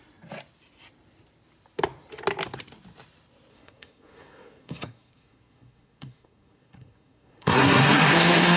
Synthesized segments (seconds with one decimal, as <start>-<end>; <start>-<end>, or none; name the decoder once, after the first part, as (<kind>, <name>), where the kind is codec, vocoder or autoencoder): 3.5-8.6 (codec, SNAC)